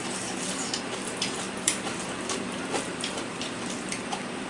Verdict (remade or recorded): remade